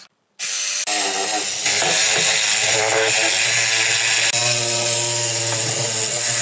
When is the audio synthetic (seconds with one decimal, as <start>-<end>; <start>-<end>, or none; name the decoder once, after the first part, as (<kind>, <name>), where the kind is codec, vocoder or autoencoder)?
none